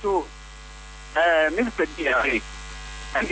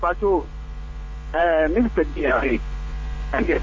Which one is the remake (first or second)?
second